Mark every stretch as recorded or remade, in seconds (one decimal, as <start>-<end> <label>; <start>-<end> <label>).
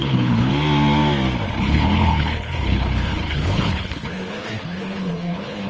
0.0-0.5 remade; 0.5-1.6 recorded; 1.6-5.7 remade